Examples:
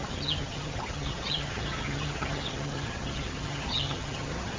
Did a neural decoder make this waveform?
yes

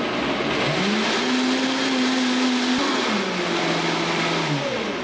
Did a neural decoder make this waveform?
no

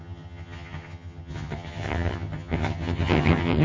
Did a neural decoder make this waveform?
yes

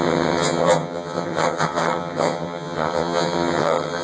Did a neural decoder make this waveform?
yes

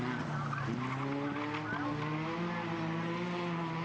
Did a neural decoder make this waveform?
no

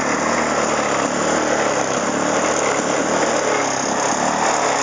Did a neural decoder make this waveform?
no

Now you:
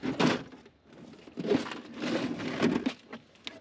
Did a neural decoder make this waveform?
no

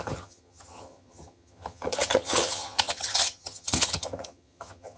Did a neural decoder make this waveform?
yes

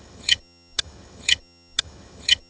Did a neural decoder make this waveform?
yes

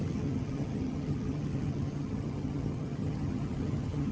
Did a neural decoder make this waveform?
yes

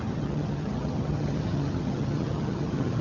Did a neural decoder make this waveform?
yes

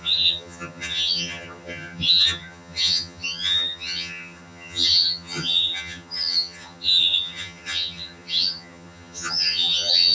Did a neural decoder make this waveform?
yes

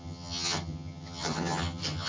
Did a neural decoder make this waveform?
yes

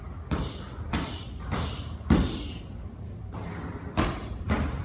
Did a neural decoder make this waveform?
no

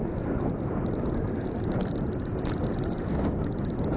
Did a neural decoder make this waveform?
no